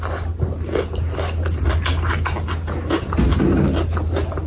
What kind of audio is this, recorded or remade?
recorded